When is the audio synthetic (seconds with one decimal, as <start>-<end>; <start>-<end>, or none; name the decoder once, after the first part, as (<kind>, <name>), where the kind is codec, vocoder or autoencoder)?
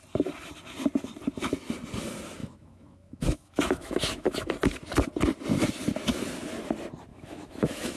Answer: 2.4-4.5 (autoencoder, DAC-VAE); 7.1-8.0